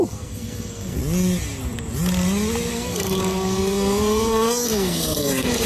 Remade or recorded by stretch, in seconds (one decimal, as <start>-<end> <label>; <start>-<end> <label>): 0.0-1.0 remade; 1.0-2.7 recorded; 2.7-5.7 remade

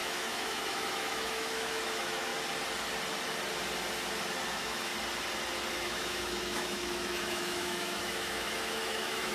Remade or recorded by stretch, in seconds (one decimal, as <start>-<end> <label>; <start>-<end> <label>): 0.0-2.3 remade; 2.3-4.5 recorded; 4.5-4.9 remade; 4.9-5.7 recorded; 5.7-9.3 remade

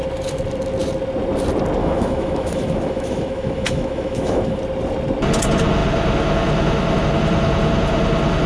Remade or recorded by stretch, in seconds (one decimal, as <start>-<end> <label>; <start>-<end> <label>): 0.0-1.8 recorded; 1.8-4.6 remade; 4.6-8.5 recorded